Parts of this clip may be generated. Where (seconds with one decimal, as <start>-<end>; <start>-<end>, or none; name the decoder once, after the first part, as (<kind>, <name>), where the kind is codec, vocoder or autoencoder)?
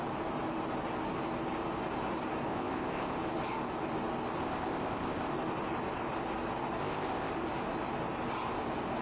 2.5-3.2 (codec, ZipCodec); 4.4-5.3; 6.8-7.3